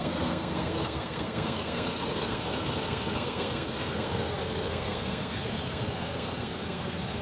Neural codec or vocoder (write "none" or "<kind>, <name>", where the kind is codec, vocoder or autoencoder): codec, SNAC